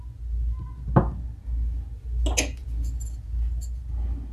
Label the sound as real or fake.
real